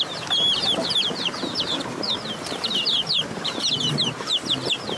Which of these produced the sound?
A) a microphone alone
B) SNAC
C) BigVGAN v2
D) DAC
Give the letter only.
C